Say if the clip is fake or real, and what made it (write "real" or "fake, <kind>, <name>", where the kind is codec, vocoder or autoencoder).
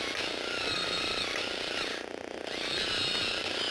real